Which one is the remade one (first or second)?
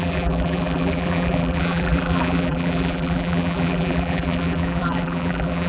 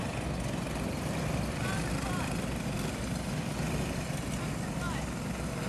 first